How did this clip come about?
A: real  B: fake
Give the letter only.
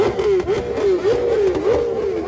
A